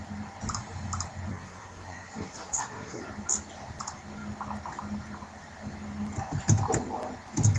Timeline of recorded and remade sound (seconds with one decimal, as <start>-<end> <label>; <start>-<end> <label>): 0.0-1.3 recorded; 1.3-3.0 remade; 3.0-7.6 recorded

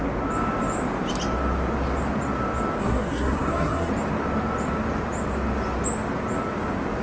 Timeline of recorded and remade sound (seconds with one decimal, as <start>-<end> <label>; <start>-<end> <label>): 0.0-2.8 recorded; 2.8-3.9 remade; 3.9-7.0 recorded